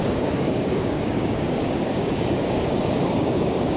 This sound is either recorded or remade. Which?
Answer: remade